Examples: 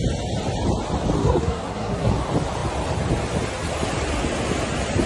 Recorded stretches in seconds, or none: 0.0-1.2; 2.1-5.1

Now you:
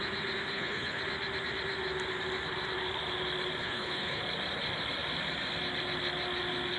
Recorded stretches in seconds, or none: 0.0-0.5; 1.0-3.6; 4.2-6.8

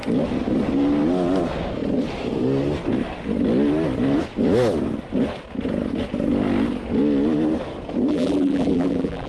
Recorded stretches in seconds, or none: 0.0-8.1

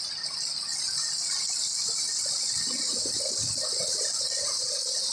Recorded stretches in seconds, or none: 0.0-5.1

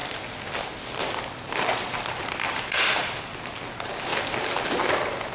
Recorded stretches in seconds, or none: 3.2-5.3

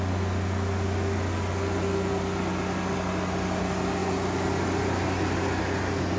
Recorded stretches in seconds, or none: 0.0-6.2